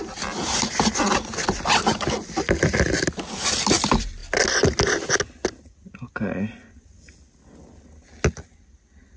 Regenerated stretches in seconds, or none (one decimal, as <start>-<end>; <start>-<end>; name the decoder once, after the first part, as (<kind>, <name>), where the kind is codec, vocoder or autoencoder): none